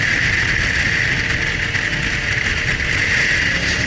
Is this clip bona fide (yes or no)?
yes